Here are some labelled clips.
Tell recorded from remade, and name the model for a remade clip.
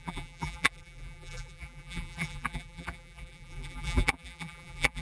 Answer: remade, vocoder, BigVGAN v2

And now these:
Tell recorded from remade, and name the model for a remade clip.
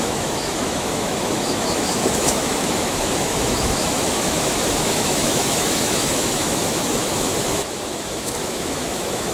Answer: remade, autoencoder, DAC-VAE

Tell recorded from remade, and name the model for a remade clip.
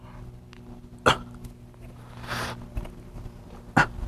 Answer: recorded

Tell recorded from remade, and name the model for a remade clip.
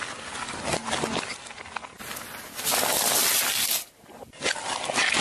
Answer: recorded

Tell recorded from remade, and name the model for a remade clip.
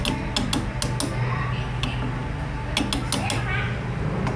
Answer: recorded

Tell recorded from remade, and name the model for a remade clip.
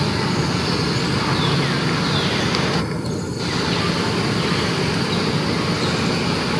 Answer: recorded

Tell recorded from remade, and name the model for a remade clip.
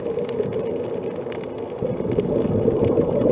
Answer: recorded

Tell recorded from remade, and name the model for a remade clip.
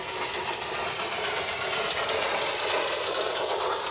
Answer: recorded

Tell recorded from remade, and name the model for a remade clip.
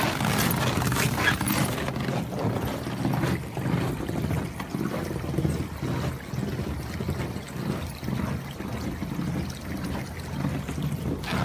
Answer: recorded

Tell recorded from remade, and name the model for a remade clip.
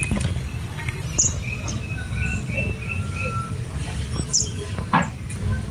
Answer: recorded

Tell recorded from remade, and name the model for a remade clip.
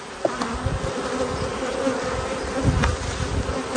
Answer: recorded